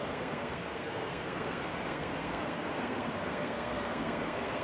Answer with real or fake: fake